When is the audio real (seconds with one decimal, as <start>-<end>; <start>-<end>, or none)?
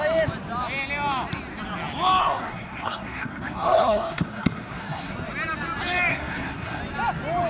0.0-2.2; 5.1-6.1; 6.8-7.5